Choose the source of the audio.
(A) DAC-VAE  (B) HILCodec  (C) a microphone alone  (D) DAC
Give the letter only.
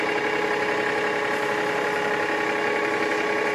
C